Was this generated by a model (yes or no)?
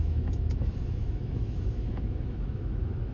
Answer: yes